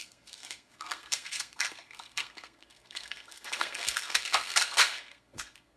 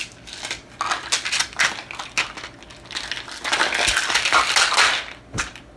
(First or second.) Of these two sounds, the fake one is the first